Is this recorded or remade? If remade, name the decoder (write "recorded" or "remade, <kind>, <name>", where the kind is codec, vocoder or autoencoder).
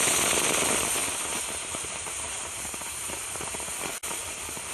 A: recorded